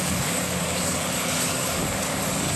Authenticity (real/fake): fake